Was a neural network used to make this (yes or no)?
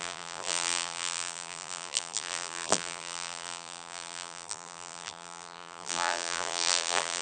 yes